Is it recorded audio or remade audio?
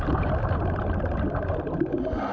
recorded